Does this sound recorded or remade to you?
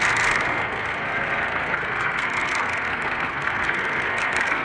remade